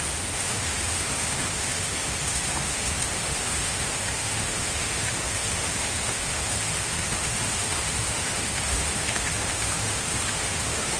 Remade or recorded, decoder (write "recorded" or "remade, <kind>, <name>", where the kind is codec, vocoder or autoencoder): remade, autoencoder, DAC-VAE